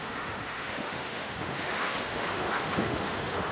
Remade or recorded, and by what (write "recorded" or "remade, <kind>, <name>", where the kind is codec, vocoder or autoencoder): remade, autoencoder, DAC-VAE